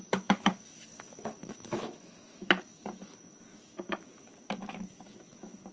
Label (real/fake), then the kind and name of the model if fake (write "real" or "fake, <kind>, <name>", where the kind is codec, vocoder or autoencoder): fake, autoencoder, DAC-VAE